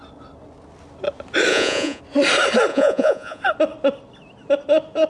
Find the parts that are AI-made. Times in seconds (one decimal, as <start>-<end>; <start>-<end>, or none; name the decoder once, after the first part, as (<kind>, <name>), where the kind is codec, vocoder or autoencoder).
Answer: 1.5-2.0 (vocoder, Vocos); 2.7-3.4